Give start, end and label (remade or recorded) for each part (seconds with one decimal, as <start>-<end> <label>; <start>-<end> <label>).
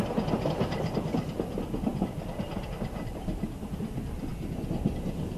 0.0-5.4 recorded